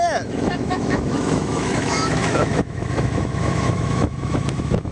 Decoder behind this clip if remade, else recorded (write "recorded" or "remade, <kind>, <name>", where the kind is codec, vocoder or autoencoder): remade, autoencoder, DAC-VAE